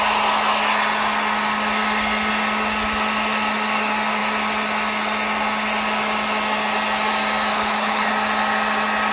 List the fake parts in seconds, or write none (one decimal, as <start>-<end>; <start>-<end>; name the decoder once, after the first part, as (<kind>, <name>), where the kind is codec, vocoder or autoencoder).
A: 7.5-8.1 (codec, HILCodec)